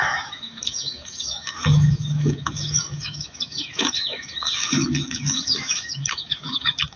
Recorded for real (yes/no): no